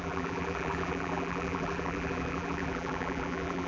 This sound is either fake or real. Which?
fake